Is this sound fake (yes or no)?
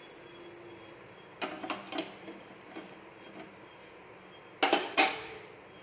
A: no